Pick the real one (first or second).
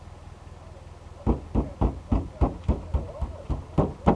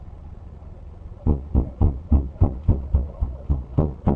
first